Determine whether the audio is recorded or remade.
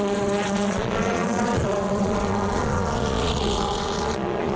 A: remade